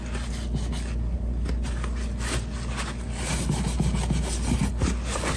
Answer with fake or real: real